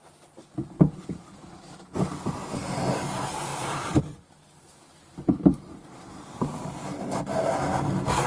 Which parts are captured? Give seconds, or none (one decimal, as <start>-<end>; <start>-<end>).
0.0-3.5; 4.0-5.0; 6.0-8.3